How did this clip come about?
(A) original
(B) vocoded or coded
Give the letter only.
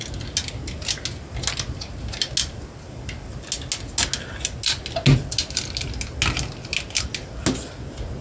A